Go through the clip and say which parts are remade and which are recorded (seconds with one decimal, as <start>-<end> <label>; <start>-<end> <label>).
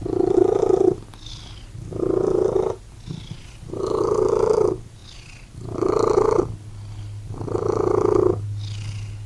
0.0-9.3 recorded